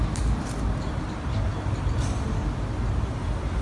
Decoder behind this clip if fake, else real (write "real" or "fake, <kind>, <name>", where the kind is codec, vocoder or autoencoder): real